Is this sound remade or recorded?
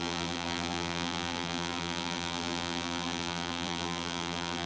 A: remade